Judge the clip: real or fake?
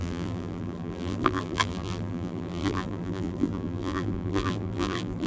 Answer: fake